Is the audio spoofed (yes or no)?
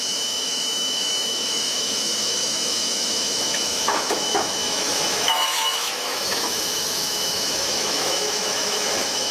yes